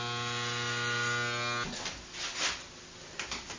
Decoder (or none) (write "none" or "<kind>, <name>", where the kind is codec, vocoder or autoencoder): none